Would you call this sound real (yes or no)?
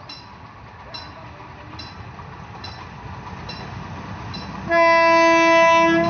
yes